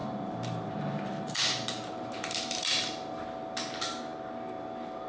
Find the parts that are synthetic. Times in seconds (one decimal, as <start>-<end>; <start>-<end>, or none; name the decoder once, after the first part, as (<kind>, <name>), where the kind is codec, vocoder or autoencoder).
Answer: 0.0-3.1 (vocoder, BigVGAN v2)